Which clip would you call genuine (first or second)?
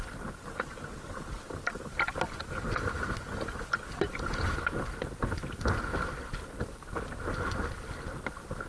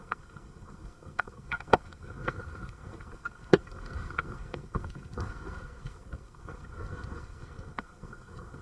first